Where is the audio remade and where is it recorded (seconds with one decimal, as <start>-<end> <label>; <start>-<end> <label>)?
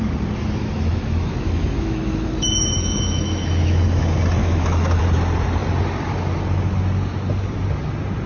0.0-0.6 recorded; 0.6-4.0 remade; 4.0-4.4 recorded; 4.4-5.0 remade; 5.0-8.3 recorded